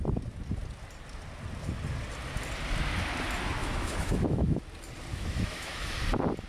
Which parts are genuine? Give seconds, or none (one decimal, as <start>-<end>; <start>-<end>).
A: 0.0-3.6; 4.6-5.1; 5.9-6.5